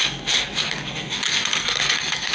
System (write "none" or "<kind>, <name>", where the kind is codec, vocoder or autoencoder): codec, SNAC